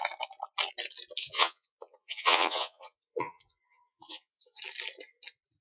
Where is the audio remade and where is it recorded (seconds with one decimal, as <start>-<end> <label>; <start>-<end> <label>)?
0.0-1.2 recorded; 1.2-4.6 remade; 4.6-5.6 recorded